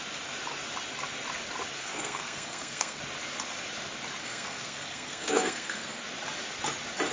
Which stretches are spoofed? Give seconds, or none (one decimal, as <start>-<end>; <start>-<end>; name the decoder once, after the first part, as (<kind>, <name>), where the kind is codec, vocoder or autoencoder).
1.8-3.0 (codec, SNAC); 4.2-6.0